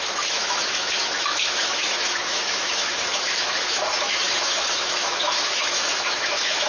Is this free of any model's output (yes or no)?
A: no